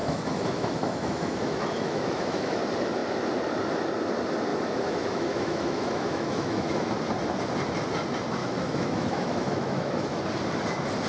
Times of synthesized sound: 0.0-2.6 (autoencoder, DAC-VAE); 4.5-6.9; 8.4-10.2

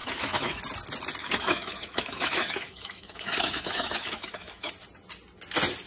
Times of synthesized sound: 0.0-0.6 (autoencoder, DAC-VAE); 1.2-4.7

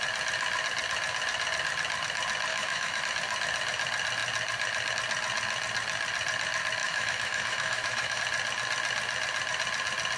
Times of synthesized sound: 2.5-3.0 (autoencoder, DAC-VAE); 6.8-8.2

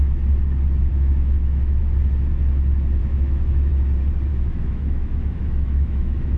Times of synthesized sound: 0.9-1.8 (autoencoder, DAC-VAE); 3.0-3.7; 4.3-6.4

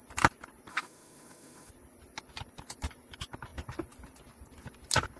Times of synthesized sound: 0.7-1.7 (autoencoder, DAC-VAE)

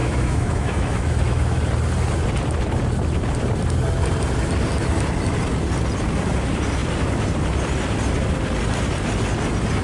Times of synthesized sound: 0.0-1.6 (autoencoder, DAC-VAE)